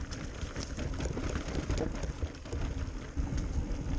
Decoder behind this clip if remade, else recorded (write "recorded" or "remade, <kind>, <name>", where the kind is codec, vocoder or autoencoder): recorded